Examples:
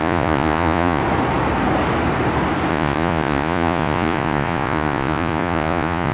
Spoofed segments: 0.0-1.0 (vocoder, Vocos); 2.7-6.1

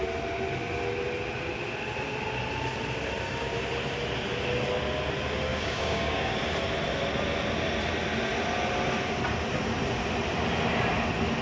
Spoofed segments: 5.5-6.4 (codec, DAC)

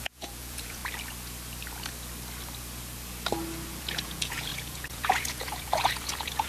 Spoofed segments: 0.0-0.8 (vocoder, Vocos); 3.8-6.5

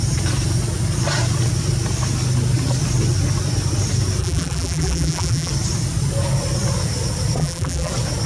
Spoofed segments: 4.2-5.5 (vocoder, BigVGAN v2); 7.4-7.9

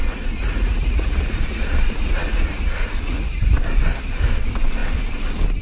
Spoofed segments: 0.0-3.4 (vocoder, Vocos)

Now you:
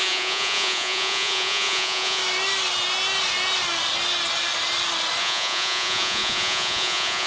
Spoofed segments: 0.0-2.2 (vocoder, Vocos); 5.2-7.3

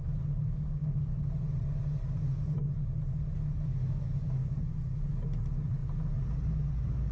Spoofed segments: 3.7-4.7 (autoencoder, DAC-VAE)

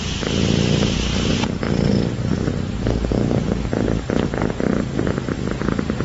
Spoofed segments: none